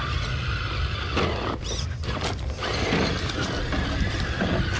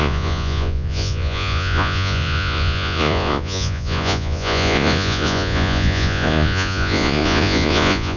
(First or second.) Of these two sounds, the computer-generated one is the second